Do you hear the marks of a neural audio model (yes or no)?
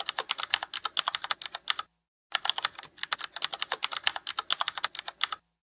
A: no